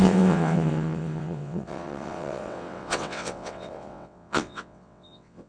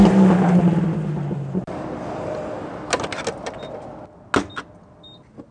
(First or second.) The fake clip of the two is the first